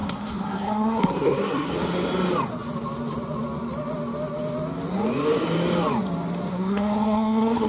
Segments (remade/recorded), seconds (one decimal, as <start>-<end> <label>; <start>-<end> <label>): 0.0-1.7 remade; 1.7-6.5 recorded; 6.5-7.7 remade